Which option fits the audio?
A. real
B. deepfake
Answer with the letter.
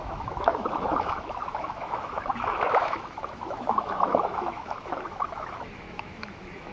B